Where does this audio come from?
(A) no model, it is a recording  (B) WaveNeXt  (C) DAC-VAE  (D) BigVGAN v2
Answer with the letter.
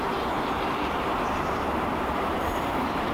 D